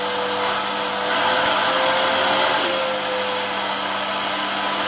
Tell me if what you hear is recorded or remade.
recorded